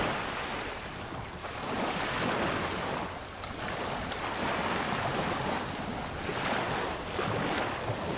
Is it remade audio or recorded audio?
recorded